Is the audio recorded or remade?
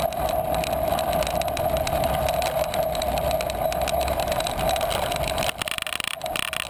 recorded